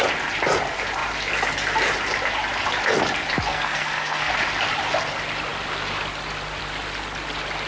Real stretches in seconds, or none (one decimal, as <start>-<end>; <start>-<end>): 0.0-3.5; 4.3-7.7